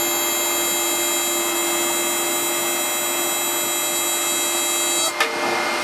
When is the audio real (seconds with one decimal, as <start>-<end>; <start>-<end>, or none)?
0.0-5.8